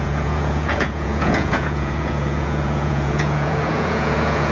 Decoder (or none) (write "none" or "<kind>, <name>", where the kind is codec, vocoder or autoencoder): vocoder, Vocos